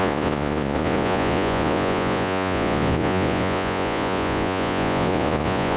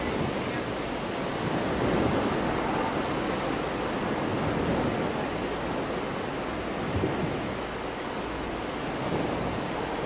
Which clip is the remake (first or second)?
first